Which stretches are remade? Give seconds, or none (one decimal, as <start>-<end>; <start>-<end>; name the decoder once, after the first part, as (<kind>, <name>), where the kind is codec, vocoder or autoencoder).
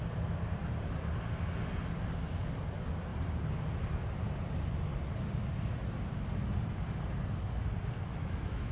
8.1-8.7 (autoencoder, DAC-VAE)